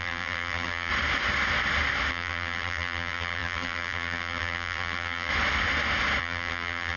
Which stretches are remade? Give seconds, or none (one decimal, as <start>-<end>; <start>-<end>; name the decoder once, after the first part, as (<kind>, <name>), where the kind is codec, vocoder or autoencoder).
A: 0.0-0.9 (vocoder, BigVGAN v2); 2.1-5.3; 6.2-7.0